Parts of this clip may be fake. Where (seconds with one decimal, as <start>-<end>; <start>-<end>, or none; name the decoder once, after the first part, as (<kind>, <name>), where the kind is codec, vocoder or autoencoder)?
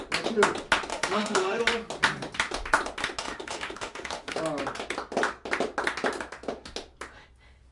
0.9-1.6 (autoencoder, DAC-VAE); 3.2-4.4